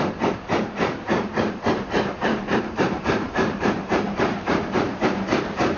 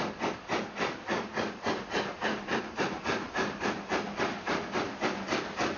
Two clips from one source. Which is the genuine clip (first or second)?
second